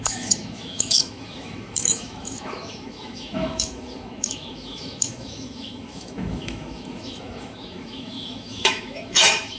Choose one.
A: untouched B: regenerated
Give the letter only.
B